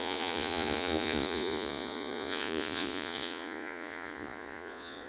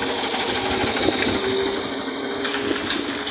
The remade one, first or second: first